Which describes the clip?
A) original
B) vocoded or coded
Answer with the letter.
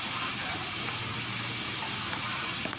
A